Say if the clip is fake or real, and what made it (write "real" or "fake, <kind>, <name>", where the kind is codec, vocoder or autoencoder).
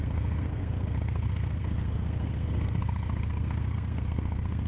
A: fake, codec, SNAC